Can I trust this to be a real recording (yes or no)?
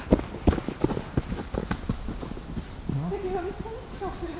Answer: yes